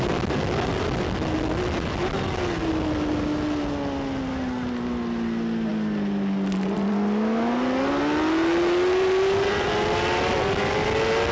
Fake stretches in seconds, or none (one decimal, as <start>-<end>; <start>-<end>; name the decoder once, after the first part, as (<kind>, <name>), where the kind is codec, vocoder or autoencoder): none